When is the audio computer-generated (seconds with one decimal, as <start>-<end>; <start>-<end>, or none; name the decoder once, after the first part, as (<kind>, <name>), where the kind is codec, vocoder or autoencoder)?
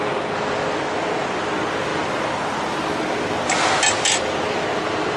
none